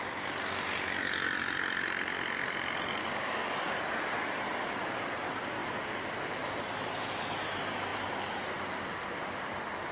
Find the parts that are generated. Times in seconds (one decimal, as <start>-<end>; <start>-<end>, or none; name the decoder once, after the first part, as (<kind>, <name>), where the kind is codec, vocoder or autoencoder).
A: 3.0-3.7 (codec, DAC)